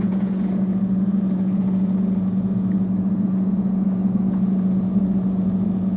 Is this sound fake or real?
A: fake